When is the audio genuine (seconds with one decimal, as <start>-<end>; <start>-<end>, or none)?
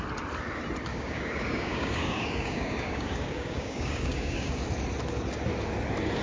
0.0-0.9; 4.6-6.2